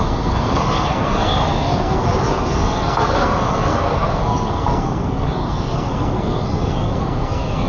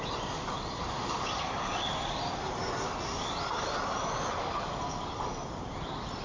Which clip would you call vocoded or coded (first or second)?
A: first